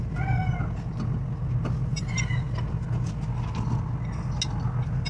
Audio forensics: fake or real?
real